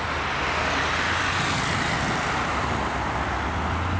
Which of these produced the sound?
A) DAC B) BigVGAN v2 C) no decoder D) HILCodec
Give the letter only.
C